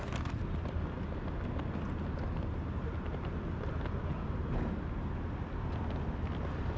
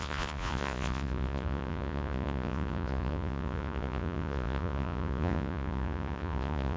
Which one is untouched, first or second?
first